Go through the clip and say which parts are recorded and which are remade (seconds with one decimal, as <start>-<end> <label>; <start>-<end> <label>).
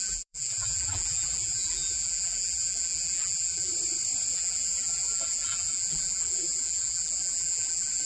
0.0-3.7 remade; 3.7-4.3 recorded; 4.3-8.1 remade